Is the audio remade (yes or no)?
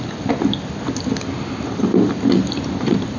no